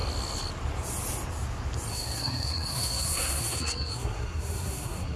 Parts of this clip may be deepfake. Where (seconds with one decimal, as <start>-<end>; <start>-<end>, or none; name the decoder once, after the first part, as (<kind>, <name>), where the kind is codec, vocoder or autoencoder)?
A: 1.9-5.2 (codec, SNAC)